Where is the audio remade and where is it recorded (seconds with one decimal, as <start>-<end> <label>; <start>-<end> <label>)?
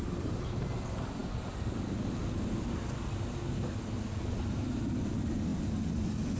0.0-6.4 recorded